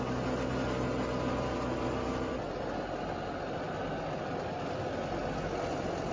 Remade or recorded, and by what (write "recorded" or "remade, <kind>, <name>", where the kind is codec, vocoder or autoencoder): recorded